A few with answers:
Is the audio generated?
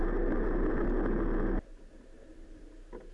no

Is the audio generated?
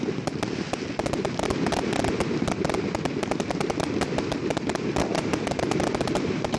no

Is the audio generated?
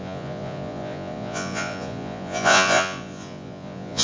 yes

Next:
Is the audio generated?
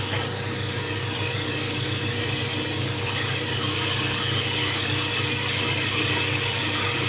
yes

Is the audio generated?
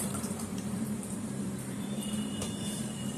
yes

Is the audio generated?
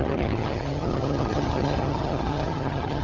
yes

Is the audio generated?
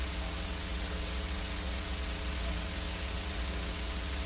yes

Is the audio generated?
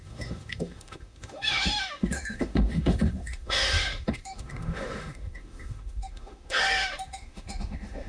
yes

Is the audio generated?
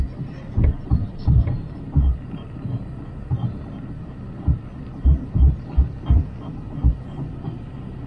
yes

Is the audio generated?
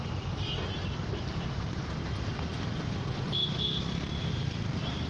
yes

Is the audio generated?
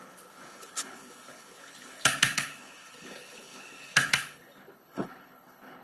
yes